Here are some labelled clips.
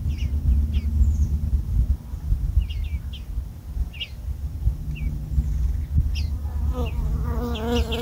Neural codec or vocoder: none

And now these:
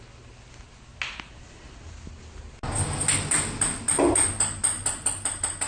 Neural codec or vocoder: none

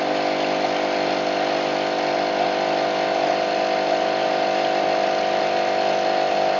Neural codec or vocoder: none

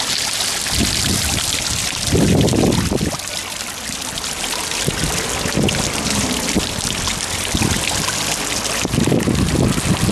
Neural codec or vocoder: none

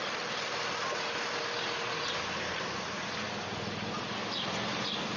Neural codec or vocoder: vocoder, BigVGAN v2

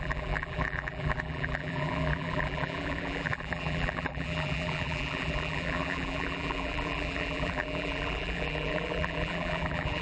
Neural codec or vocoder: vocoder, BigVGAN v2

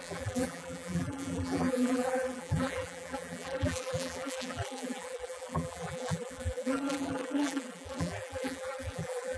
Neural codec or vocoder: vocoder, BigVGAN v2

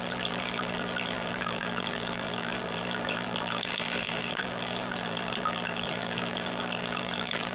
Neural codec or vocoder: vocoder, BigVGAN v2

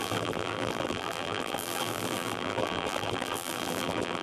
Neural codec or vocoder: vocoder, BigVGAN v2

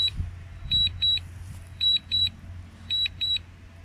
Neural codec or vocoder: vocoder, BigVGAN v2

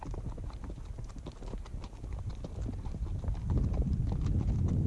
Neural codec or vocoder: none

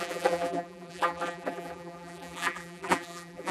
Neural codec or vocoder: vocoder, BigVGAN v2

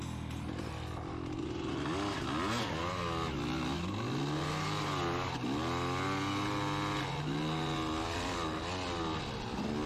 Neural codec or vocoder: none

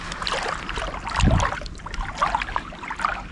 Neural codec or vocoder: none